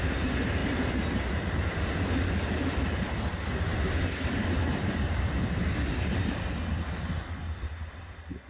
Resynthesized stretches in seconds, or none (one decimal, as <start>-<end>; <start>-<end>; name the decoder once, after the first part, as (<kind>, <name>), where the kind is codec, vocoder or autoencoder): none